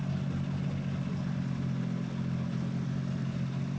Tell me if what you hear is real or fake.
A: real